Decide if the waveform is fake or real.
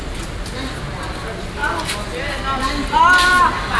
real